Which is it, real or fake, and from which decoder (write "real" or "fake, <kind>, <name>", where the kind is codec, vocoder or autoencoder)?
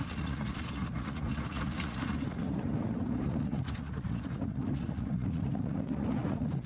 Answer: fake, vocoder, Vocos